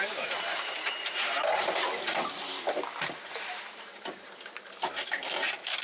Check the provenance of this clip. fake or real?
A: fake